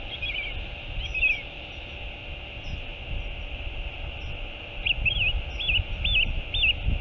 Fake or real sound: real